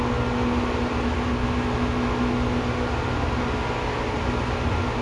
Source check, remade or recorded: recorded